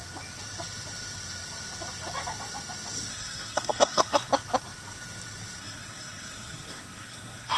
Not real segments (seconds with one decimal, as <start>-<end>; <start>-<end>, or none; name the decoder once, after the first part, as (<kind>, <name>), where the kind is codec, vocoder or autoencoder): 3.1-4.3 (codec, SNAC); 5.6-7.6